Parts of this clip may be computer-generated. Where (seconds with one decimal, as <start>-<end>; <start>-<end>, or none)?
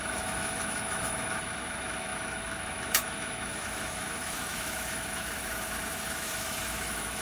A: 0.0-7.2